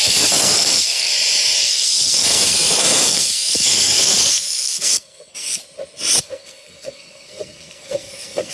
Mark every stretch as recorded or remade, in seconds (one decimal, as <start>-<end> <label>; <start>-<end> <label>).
0.0-1.1 remade; 1.1-1.6 recorded; 1.6-5.6 remade; 5.6-6.2 recorded; 6.2-8.5 remade